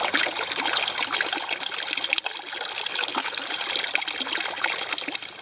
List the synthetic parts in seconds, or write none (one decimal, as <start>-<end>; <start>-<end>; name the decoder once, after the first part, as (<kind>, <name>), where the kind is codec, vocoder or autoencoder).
2.9-3.5 (codec, DAC)